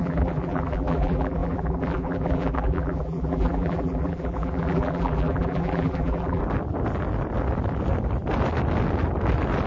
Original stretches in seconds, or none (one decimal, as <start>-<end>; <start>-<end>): 6.4-9.7